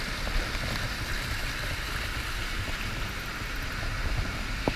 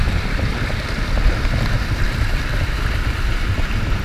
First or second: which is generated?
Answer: second